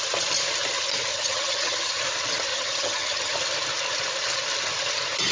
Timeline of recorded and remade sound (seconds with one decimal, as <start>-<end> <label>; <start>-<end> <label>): 0.0-1.1 recorded; 1.1-2.0 remade; 2.0-2.5 recorded; 2.5-3.3 remade; 3.3-5.3 recorded